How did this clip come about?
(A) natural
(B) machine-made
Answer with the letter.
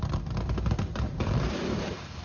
B